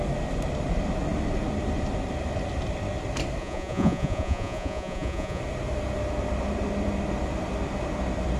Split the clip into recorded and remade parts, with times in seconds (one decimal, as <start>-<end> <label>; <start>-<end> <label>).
0.0-3.4 recorded; 3.4-5.4 remade; 5.4-8.4 recorded